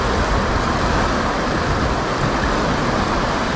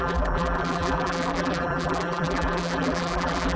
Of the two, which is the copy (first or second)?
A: second